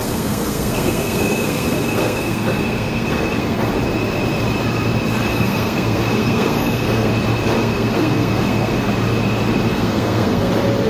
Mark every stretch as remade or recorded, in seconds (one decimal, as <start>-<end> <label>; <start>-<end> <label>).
0.0-3.7 remade; 3.7-5.3 recorded; 5.3-7.1 remade; 7.1-7.6 recorded; 7.6-8.9 remade; 8.9-9.7 recorded; 9.7-10.5 remade; 10.5-10.9 recorded